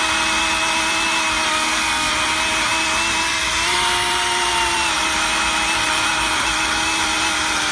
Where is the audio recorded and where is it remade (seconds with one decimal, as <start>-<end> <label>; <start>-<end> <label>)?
0.0-1.5 recorded; 1.5-2.1 remade; 2.1-7.7 recorded